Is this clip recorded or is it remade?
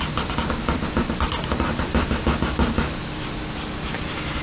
recorded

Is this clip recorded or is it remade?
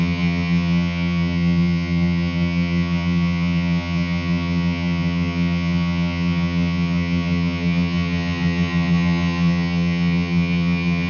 remade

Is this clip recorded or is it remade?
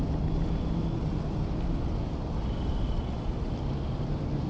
recorded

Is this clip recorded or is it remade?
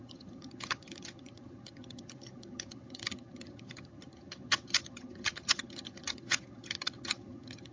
remade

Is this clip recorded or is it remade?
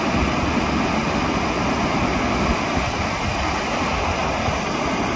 recorded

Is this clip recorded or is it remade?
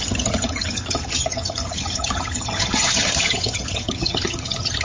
remade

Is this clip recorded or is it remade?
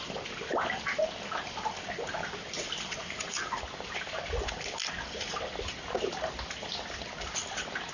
recorded